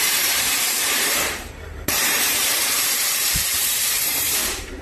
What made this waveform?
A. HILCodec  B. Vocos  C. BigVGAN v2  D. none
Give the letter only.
C